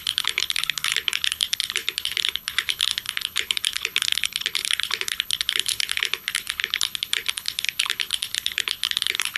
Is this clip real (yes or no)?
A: no